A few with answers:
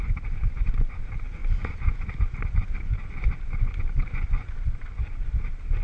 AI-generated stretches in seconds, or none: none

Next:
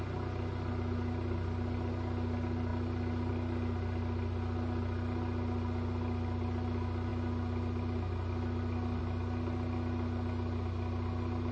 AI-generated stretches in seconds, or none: none

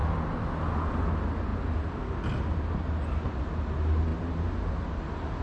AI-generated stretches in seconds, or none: none

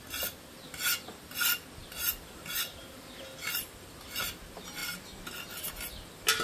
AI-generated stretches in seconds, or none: none

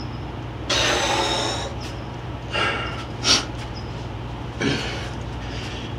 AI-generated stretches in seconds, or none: none

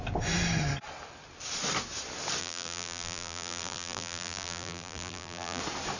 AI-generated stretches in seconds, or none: 2.4-5.6 (vocoder, BigVGAN v2)

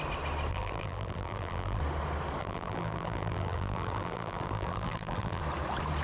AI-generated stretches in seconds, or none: 0.5-1.8 (vocoder, BigVGAN v2); 2.4-5.4

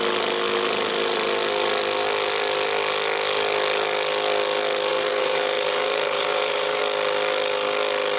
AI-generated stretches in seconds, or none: 4.9-6.8 (vocoder, BigVGAN v2)